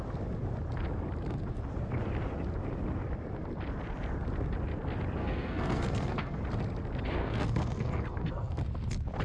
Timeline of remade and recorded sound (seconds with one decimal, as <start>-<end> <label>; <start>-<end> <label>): 0.0-5.2 recorded; 5.2-6.4 remade; 6.4-7.2 recorded; 7.2-8.6 remade; 8.6-9.2 recorded